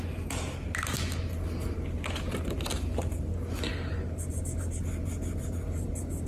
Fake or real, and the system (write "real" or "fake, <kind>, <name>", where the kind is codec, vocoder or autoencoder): real